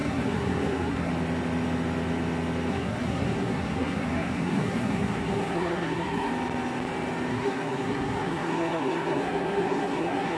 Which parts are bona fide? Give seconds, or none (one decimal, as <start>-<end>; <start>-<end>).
1.1-2.7; 6.3-7.3